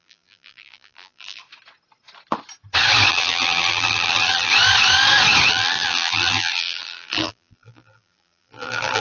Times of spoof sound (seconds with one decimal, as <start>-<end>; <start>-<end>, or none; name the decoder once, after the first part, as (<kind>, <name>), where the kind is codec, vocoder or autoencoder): 0.0-1.4 (vocoder, BigVGAN v2); 3.1-4.5; 5.5-9.0